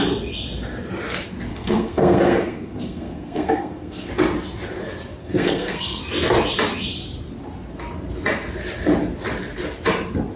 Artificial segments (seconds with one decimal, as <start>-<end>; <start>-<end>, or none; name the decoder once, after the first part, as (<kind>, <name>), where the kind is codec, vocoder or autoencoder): 1.5-4.1 (codec, SNAC); 5.2-6.0